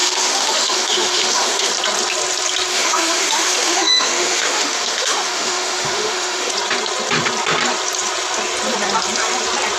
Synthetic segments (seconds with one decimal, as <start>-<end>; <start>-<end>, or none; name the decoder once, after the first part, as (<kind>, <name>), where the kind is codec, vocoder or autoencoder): 0.0-1.7 (autoencoder, DAC-VAE); 2.7-6.5